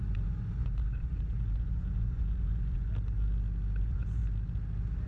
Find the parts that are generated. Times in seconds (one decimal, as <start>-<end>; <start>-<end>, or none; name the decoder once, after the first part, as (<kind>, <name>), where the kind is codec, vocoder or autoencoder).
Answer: 0.0-2.9 (vocoder, Vocos); 3.8-4.2